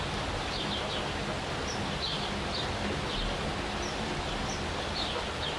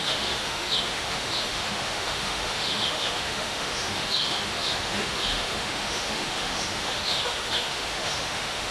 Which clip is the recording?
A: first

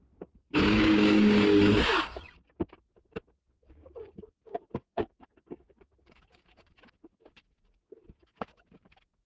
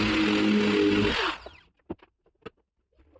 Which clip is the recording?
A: second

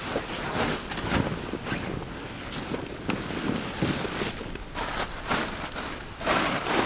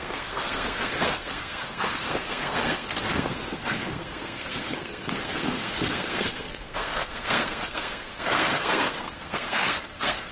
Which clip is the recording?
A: first